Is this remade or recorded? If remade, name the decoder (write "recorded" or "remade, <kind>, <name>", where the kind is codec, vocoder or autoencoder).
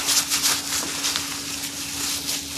recorded